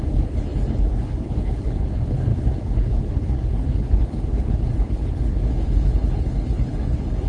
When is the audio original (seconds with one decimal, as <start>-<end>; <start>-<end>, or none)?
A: none